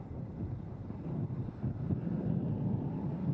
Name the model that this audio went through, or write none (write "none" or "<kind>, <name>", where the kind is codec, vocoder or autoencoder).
none